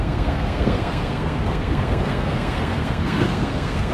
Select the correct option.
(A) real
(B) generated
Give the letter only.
B